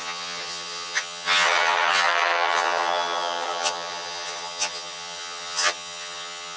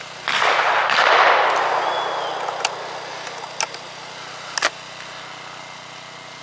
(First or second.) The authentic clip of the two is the second